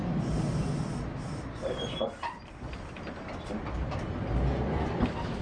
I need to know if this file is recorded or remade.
recorded